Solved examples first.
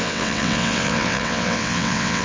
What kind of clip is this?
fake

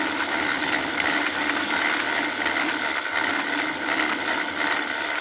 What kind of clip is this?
real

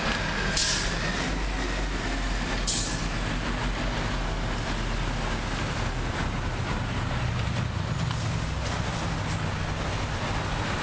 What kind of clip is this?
real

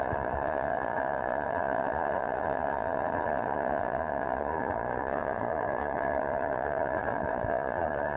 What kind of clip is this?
fake